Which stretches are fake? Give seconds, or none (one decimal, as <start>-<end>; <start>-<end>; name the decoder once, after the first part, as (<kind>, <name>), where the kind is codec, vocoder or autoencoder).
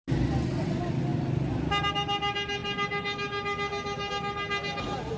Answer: none